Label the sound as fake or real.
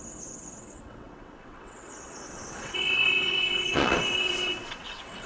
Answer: fake